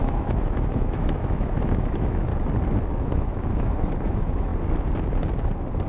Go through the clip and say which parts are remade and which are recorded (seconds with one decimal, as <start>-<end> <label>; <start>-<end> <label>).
0.0-2.3 remade; 2.3-3.0 recorded; 3.0-4.5 remade; 4.5-5.9 recorded